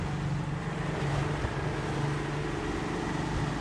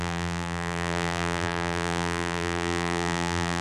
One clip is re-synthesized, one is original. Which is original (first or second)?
first